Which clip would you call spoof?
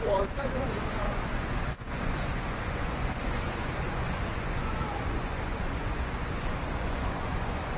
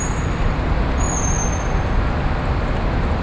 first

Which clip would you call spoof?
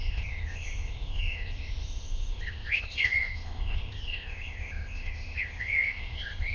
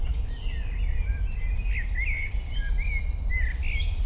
first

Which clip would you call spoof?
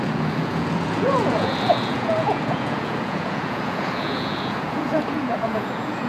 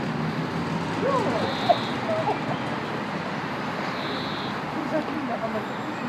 first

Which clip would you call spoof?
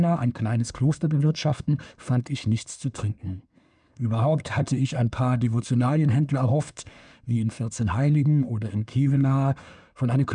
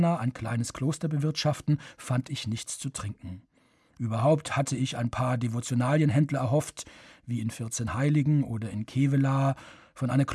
first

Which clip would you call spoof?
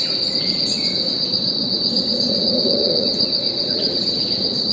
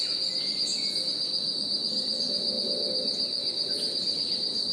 first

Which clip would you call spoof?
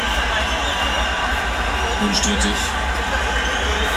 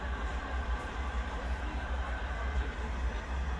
second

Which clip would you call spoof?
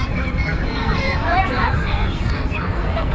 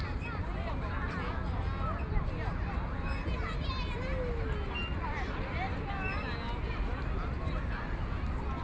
first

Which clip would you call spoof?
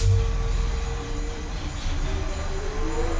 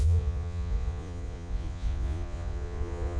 second